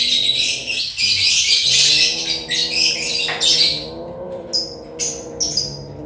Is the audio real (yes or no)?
yes